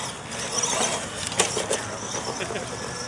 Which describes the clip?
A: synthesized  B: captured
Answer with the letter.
B